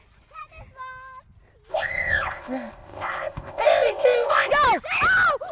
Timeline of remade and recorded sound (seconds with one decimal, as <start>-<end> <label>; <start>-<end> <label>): 0.0-1.7 recorded; 1.7-4.5 remade; 4.5-5.5 recorded